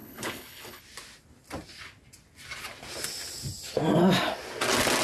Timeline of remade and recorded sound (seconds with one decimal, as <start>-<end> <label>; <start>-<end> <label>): 0.0-0.8 remade; 0.8-5.0 recorded